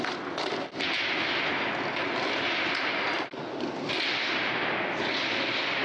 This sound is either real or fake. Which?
real